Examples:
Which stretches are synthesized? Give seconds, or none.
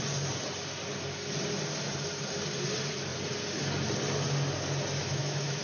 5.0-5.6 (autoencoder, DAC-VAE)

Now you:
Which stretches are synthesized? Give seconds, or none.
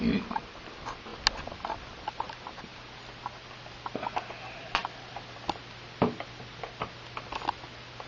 none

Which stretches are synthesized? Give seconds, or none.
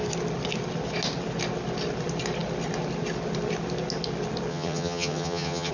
4.5-5.7 (vocoder, HiFi-GAN)